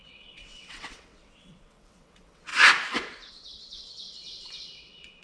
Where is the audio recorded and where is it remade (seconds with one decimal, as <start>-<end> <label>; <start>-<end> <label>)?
0.0-2.5 remade; 2.5-3.3 recorded; 3.3-5.2 remade